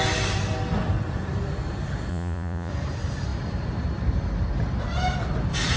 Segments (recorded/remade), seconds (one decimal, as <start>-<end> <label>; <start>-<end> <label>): 0.0-2.1 recorded; 2.1-2.7 remade; 2.7-5.8 recorded